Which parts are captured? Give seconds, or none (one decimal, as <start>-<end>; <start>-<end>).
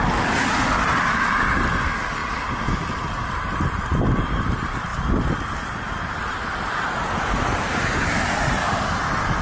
0.0-9.4